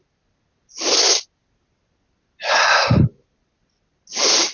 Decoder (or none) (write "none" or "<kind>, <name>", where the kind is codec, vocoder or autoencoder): none